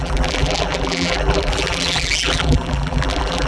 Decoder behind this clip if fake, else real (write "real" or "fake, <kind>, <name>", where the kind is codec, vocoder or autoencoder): fake, vocoder, BigVGAN v2